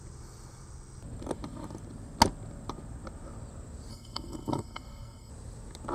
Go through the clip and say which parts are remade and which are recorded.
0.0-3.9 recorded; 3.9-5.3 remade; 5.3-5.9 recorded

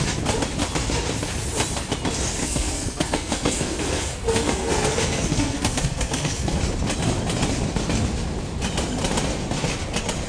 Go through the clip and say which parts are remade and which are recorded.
0.0-2.4 recorded; 2.4-6.6 remade; 6.6-10.3 recorded

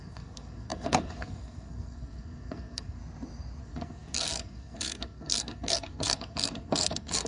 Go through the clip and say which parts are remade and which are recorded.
0.0-3.0 remade; 3.0-3.6 recorded; 3.6-7.3 remade

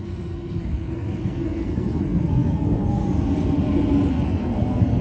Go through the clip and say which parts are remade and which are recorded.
0.0-3.0 remade; 3.0-4.1 recorded; 4.1-5.0 remade

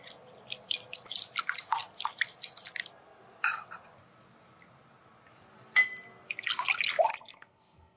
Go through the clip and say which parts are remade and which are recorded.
0.0-7.1 recorded; 7.1-8.0 remade

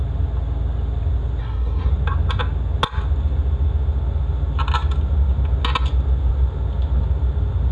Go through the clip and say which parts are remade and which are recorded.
0.0-1.4 recorded; 1.4-1.9 remade; 1.9-7.7 recorded

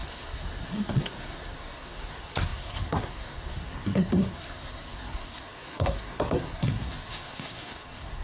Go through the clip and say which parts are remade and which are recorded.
0.0-8.2 remade

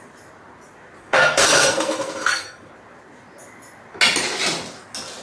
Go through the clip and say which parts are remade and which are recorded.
0.0-1.0 recorded; 1.0-2.7 remade; 2.7-5.2 recorded